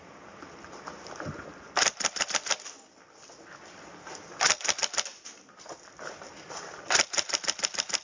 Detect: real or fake real